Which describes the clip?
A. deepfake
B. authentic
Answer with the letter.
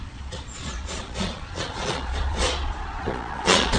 A